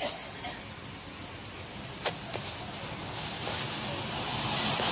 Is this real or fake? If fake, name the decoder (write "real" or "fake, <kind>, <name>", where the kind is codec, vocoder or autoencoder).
real